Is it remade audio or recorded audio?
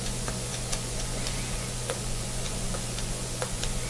remade